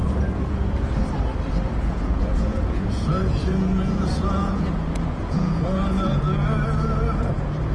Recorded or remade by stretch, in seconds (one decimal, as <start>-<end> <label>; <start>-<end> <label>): 0.0-1.7 recorded; 1.7-7.7 remade

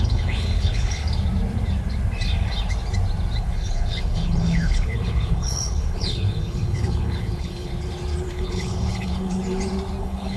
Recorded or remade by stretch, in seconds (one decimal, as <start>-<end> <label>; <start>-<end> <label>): 0.0-1.0 remade; 1.0-3.4 recorded; 3.4-7.7 remade; 7.7-8.2 recorded; 8.2-9.4 remade; 9.4-10.0 recorded; 10.0-10.4 remade

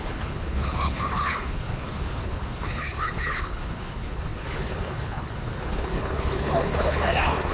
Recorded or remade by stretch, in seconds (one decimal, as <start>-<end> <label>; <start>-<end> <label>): 0.0-7.5 remade